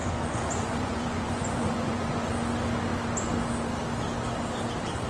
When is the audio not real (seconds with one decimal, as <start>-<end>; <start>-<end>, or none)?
0.0-2.3